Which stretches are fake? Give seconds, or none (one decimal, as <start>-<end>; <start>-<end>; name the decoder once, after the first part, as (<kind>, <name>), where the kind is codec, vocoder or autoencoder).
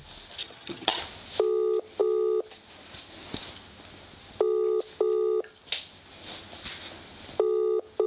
0.4-1.0 (vocoder, HiFi-GAN)